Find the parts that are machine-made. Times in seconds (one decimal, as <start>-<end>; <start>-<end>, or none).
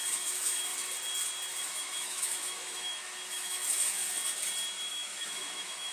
0.0-0.7; 1.6-4.0; 4.9-5.9